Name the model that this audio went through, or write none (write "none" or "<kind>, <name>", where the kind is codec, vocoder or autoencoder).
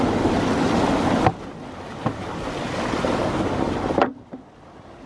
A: none